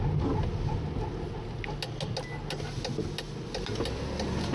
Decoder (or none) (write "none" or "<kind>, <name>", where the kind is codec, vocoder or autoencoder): none